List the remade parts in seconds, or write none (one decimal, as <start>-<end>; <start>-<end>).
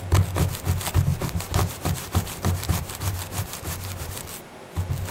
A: 1.1-4.2